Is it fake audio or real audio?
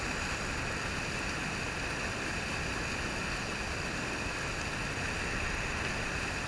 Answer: real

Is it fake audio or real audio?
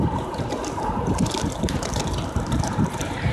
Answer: fake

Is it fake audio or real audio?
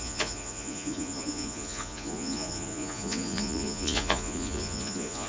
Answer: fake